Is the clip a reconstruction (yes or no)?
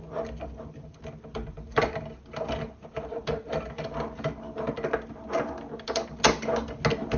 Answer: no